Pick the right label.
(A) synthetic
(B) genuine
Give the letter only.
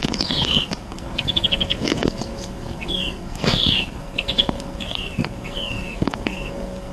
A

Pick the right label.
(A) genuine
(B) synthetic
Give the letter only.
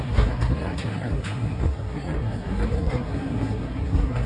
B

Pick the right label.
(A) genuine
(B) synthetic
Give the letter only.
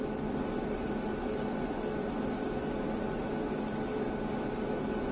A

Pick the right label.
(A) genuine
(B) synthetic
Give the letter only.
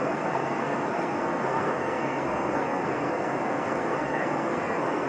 B